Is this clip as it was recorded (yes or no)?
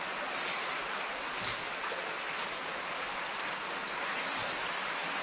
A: yes